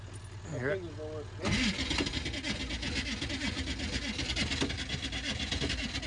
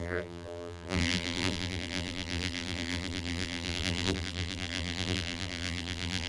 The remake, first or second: second